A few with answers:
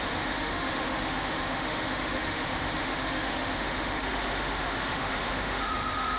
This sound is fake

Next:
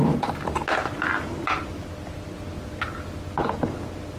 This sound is real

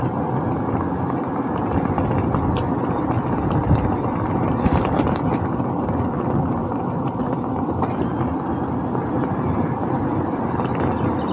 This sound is real